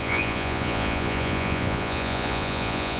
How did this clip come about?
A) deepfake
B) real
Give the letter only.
A